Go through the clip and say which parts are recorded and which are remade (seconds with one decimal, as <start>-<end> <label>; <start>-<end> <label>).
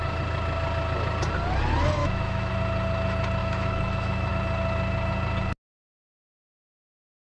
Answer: 0.0-2.0 recorded; 2.0-2.5 remade; 2.5-3.4 recorded; 3.4-4.3 remade; 4.3-7.3 recorded